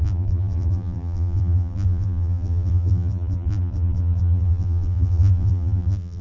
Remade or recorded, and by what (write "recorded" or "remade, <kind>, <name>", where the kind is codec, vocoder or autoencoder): remade, vocoder, BigVGAN v2